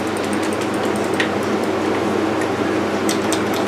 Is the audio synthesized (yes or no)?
no